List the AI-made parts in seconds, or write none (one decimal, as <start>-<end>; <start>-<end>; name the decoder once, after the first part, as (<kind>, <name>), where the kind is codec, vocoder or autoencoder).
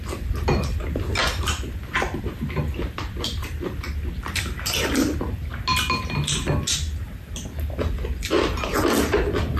1.2-3.8 (vocoder, BigVGAN v2)